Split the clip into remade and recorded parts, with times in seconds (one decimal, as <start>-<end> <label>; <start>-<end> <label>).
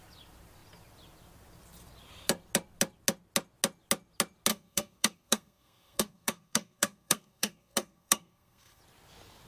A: 0.0-4.5 recorded; 4.5-8.8 remade; 8.8-9.5 recorded